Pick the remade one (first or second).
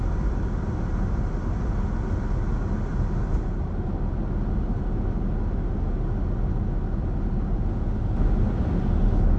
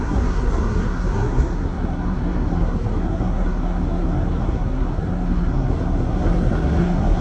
second